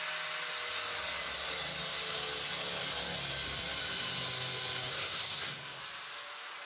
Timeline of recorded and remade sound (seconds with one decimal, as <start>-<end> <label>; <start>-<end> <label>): 0.0-4.9 recorded; 4.9-5.8 remade; 5.8-6.7 recorded